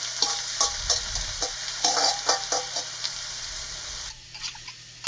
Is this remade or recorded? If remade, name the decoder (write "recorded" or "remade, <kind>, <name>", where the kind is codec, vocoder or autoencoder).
recorded